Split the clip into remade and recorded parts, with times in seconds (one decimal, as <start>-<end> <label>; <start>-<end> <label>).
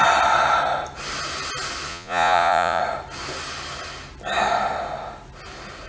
0.0-1.9 recorded; 1.9-2.8 remade; 2.8-5.9 recorded